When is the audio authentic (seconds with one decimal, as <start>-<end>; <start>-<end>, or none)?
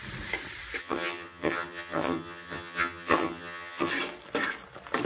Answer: 0.0-0.8; 3.9-5.1